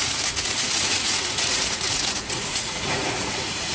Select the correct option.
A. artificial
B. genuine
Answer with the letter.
A